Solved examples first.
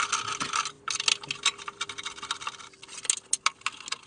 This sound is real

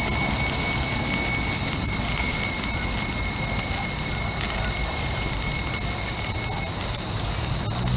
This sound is real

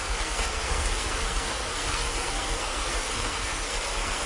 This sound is fake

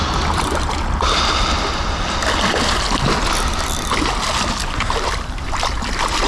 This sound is real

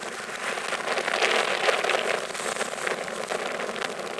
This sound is real